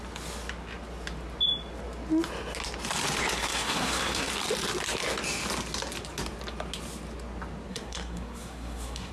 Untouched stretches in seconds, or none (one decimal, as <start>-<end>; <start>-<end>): 0.0-3.4; 4.3-7.7